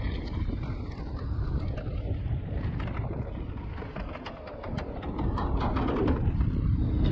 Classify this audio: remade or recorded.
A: recorded